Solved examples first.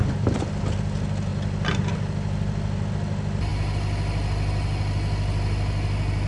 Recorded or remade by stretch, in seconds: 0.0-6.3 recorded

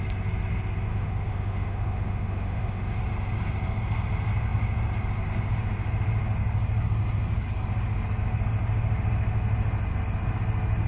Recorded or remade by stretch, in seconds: 0.0-0.9 recorded; 0.9-3.0 remade; 3.0-10.9 recorded

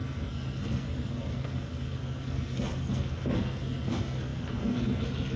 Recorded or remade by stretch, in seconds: 0.0-5.4 remade

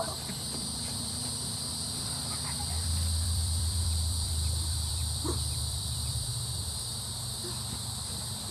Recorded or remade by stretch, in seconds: 0.0-2.6 recorded; 2.6-6.9 remade; 6.9-8.5 recorded

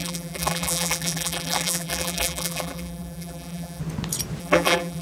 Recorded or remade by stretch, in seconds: 0.0-3.8 remade; 3.8-4.4 recorded; 4.4-5.0 remade

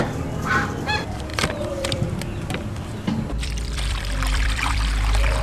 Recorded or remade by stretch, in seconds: 0.0-5.4 remade